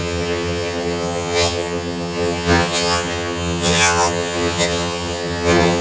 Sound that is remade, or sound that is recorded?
remade